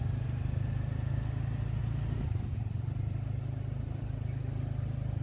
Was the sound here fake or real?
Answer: real